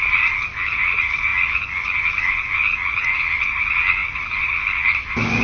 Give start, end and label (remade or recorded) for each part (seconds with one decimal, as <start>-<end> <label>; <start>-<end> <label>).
0.0-5.4 recorded